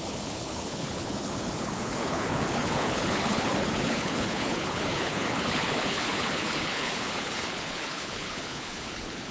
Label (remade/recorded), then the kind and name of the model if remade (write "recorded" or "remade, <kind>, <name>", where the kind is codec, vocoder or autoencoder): remade, codec, HILCodec